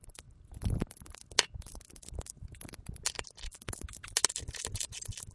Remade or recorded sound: recorded